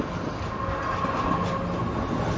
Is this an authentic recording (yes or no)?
yes